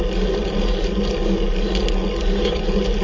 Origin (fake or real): real